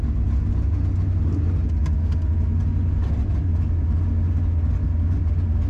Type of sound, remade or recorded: recorded